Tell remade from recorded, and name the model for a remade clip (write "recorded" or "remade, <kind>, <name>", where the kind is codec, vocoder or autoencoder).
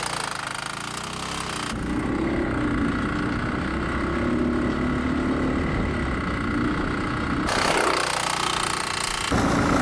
recorded